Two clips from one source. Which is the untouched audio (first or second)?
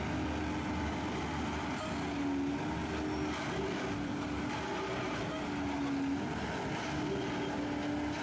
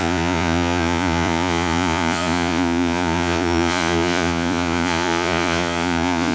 first